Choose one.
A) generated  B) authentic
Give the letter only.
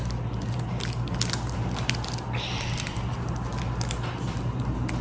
B